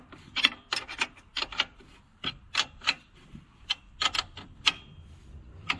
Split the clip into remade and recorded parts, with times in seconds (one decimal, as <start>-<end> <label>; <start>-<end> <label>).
0.0-5.8 remade